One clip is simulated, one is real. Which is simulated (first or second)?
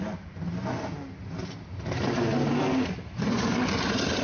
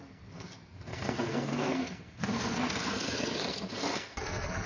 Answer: second